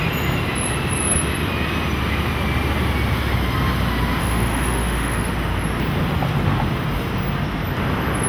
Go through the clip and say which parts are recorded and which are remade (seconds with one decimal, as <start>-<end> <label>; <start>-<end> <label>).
0.0-4.2 recorded; 4.2-5.3 remade; 5.3-8.3 recorded